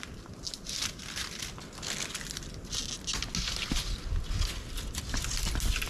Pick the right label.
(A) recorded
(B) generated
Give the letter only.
A